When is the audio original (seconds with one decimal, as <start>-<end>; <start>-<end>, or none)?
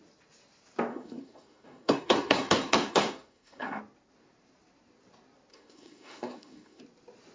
0.0-0.9; 3.8-5.5; 6.8-7.3